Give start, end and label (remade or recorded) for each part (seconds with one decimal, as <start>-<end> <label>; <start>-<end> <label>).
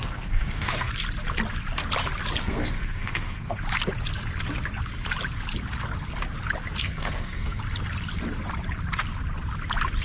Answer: 0.0-0.9 remade; 0.9-2.4 recorded; 2.4-3.6 remade; 3.6-6.8 recorded; 6.8-7.6 remade; 7.6-10.0 recorded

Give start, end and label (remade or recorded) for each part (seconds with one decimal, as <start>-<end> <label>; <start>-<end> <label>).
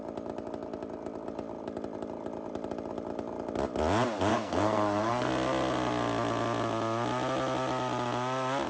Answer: 0.0-4.3 recorded; 4.3-5.3 remade; 5.3-8.7 recorded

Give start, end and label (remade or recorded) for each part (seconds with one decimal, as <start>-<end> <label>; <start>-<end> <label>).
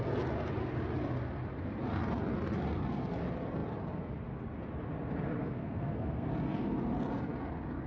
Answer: 0.0-5.4 recorded; 5.4-6.3 remade; 6.3-7.9 recorded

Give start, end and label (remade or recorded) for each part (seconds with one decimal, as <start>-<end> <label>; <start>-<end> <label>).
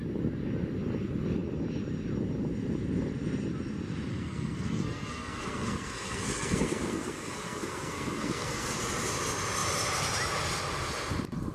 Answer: 0.0-4.1 recorded; 4.1-8.8 remade; 8.8-11.5 recorded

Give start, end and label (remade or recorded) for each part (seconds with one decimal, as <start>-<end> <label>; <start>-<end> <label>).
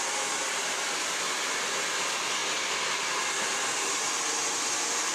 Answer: 0.0-5.1 recorded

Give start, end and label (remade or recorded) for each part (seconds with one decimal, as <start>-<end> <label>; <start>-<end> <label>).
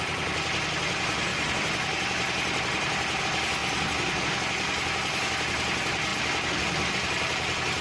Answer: 0.0-7.8 recorded